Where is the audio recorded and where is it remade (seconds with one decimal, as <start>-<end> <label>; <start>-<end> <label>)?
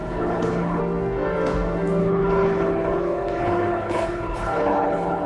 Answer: 0.0-0.8 remade; 0.8-2.0 recorded; 2.0-5.3 remade